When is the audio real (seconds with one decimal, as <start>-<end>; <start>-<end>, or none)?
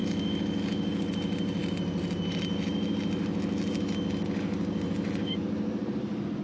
0.0-6.4